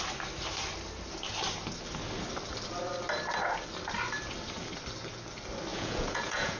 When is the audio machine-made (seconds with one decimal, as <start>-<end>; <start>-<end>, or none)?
5.7-6.6